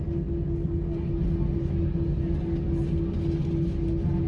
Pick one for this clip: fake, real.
real